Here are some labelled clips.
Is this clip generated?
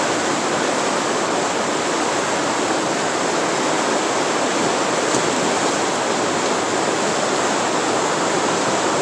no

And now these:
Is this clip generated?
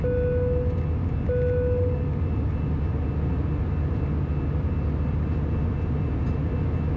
no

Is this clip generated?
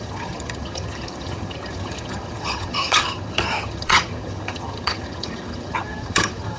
yes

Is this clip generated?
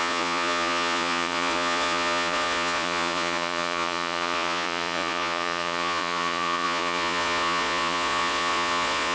yes